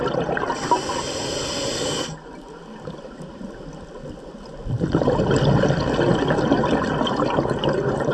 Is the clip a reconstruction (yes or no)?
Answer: no